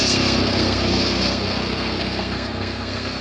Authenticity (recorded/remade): remade